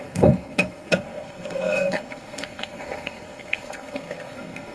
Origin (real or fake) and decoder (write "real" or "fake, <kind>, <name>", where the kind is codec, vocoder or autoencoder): fake, codec, SNAC